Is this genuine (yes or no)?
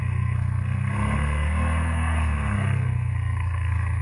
no